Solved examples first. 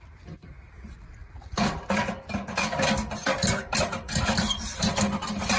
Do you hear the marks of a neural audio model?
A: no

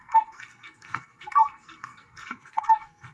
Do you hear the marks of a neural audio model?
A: yes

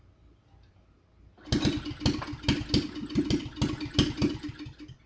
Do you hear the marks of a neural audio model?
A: no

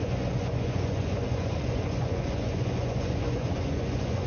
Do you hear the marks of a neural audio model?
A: yes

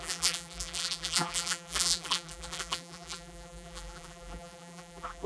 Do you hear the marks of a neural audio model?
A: yes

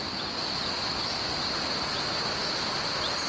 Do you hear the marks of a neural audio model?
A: no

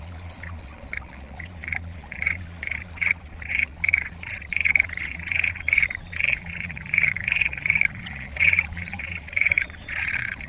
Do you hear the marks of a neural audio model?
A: yes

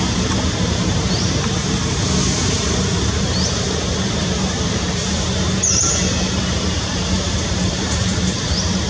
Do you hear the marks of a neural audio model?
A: yes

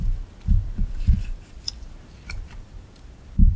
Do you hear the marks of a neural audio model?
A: yes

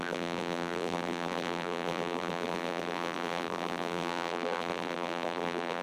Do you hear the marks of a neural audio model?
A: yes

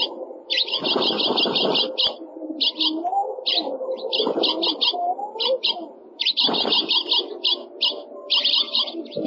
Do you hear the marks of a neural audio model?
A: no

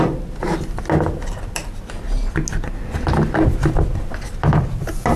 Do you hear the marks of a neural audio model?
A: no